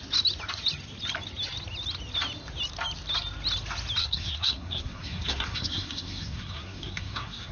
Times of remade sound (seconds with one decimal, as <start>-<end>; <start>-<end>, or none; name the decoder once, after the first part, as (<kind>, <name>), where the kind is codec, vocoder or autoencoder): 4.0-7.5 (codec, SNAC)